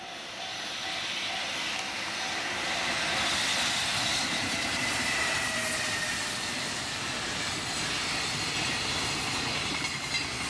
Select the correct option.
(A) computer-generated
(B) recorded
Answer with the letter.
B